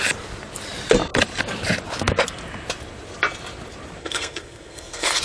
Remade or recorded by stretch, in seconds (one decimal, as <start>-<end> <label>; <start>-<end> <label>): 0.0-4.0 recorded; 4.0-5.2 remade

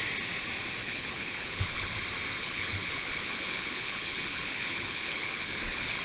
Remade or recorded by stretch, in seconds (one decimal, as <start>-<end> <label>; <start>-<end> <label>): 0.0-0.8 recorded; 0.8-2.0 remade; 2.0-2.4 recorded; 2.4-6.0 remade

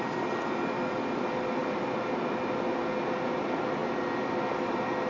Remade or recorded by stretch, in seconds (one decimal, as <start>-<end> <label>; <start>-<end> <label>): 0.0-5.1 recorded

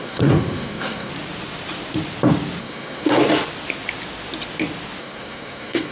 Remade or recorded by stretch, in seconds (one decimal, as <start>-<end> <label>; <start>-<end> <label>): 0.0-1.1 remade; 1.1-2.6 recorded; 2.6-3.2 remade; 3.2-5.0 recorded; 5.0-5.9 remade

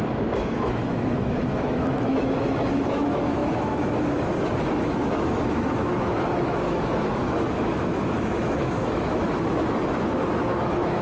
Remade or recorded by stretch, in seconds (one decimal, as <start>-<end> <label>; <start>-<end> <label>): 0.0-11.0 remade

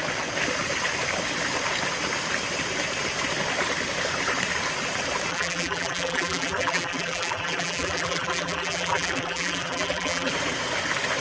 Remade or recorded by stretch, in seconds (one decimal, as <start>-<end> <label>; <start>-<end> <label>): 0.0-5.3 recorded; 5.3-10.3 remade; 10.3-11.2 recorded

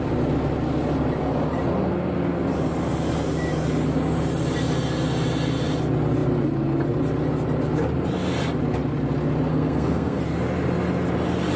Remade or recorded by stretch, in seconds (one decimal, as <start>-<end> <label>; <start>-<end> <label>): 0.0-9.5 recorded; 9.5-10.2 remade; 10.2-11.6 recorded

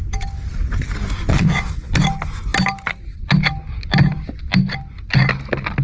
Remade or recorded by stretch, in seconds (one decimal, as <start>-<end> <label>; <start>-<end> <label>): 0.0-1.3 recorded; 1.3-1.9 remade; 1.9-5.8 recorded